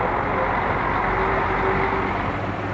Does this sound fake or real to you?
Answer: real